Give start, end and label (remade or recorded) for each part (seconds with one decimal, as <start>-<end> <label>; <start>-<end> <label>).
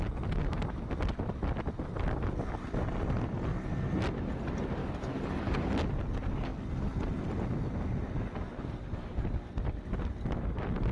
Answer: 0.0-4.8 recorded; 4.8-5.7 remade; 5.7-10.9 recorded